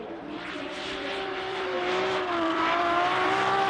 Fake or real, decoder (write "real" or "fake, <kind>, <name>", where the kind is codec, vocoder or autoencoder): fake, vocoder, BigVGAN v2